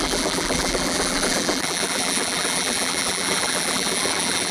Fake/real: fake